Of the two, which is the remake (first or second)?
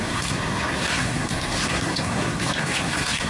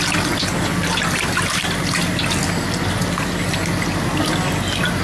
first